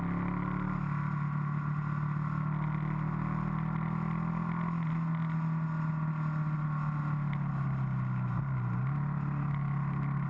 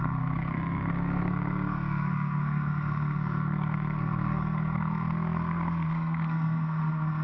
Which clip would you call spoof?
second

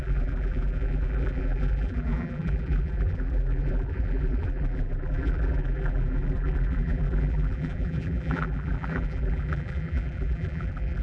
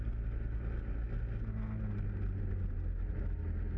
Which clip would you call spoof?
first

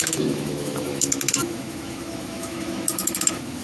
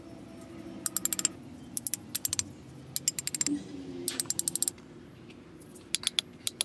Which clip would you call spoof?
first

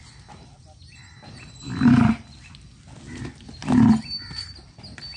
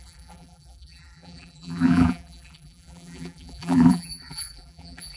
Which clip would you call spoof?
second